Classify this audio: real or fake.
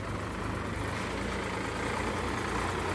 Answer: real